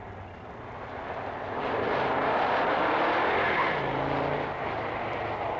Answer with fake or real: real